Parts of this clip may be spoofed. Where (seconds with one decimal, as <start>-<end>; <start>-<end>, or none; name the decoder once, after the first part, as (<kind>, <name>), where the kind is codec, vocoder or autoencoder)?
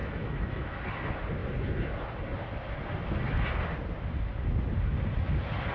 0.0-0.8 (autoencoder, DAC-VAE)